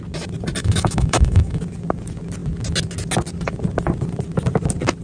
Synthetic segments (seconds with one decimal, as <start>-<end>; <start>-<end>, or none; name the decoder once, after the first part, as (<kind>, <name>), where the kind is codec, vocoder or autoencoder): 0.6-1.6 (autoencoder, DAC-VAE)